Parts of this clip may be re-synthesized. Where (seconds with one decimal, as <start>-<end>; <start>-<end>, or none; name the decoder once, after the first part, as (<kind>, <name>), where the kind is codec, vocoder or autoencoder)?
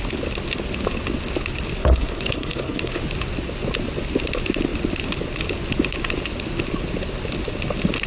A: 1.8-3.0 (codec, HILCodec)